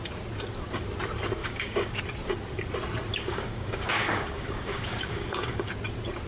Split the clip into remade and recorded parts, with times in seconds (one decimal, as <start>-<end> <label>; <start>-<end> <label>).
0.0-1.4 recorded; 1.4-2.0 remade; 2.0-3.1 recorded; 3.1-5.7 remade; 5.7-6.3 recorded